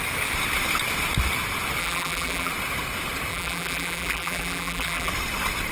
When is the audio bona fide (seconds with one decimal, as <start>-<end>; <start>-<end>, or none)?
0.0-1.8; 2.5-3.3; 5.1-5.7